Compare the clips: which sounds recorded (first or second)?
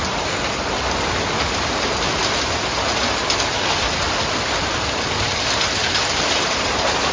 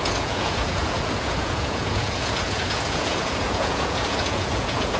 first